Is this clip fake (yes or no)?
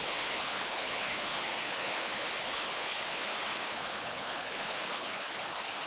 yes